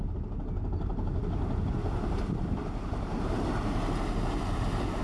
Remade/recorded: recorded